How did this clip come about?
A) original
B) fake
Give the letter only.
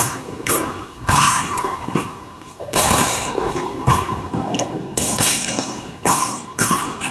B